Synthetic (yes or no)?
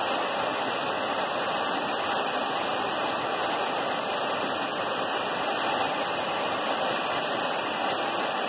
no